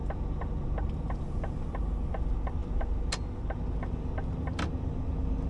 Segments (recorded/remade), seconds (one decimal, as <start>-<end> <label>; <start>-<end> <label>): 0.0-5.5 recorded